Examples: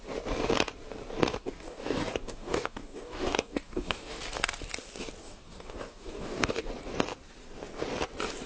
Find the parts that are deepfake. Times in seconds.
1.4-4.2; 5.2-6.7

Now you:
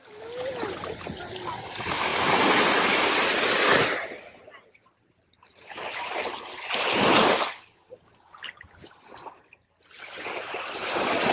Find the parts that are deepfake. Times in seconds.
none

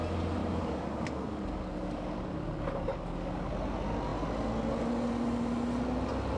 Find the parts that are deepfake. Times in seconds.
0.4-3.5

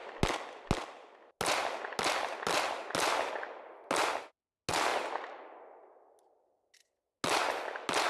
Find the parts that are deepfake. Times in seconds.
none

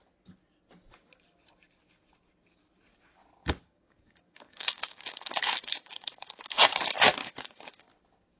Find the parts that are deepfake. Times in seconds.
3.4-6.4; 7.2-7.9